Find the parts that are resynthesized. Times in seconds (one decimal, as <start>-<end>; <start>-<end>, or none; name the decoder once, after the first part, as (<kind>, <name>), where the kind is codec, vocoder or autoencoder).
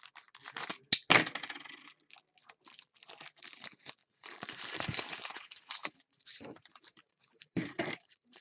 4.0-8.4 (vocoder, BigVGAN v2)